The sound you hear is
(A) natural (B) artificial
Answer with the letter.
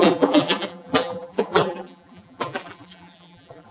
B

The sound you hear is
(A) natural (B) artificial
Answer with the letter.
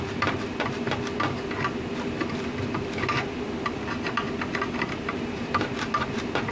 A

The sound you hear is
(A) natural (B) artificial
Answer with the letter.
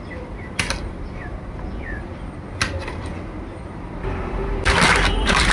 B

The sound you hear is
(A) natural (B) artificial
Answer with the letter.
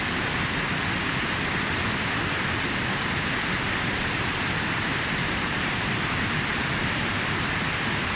B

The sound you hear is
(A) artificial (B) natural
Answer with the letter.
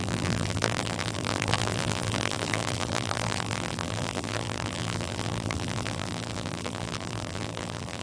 A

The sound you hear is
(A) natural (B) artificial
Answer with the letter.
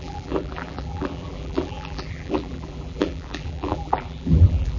B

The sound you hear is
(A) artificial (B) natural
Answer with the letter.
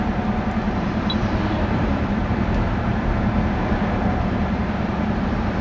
A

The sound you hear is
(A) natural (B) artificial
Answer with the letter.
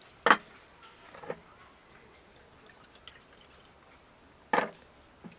A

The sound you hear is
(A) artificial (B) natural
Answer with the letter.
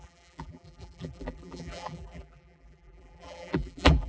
A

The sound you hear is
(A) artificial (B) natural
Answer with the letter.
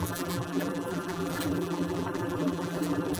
A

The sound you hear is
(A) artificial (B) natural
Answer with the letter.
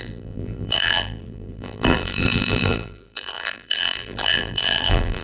A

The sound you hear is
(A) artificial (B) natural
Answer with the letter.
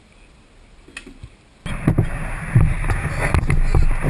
B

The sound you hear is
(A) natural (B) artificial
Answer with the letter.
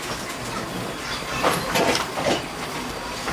A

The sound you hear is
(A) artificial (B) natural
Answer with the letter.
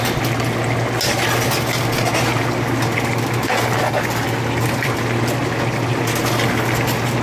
B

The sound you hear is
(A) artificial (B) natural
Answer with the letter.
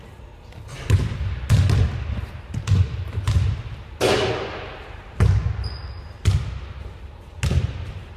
B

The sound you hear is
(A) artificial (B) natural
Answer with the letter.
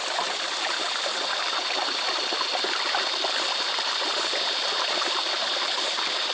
A